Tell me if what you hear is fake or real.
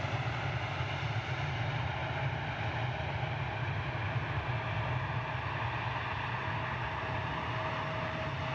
real